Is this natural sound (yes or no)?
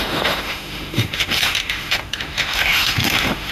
no